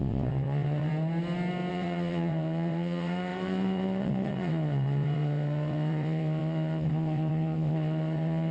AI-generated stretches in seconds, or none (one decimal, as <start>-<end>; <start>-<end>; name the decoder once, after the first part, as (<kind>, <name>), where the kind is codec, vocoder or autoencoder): 0.0-0.9 (vocoder, WaveNeXt); 1.7-8.5